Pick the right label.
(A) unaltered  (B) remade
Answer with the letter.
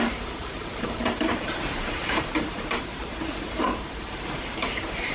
B